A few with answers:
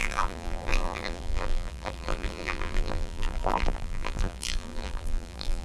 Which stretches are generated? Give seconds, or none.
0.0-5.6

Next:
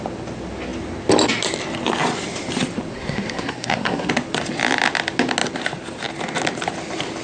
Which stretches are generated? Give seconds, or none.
2.9-4.1

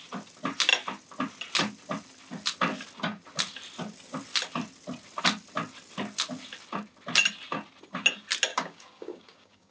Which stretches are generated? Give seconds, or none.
8.5-9.7

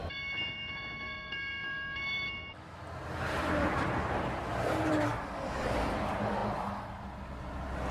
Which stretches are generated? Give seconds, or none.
0.0-2.8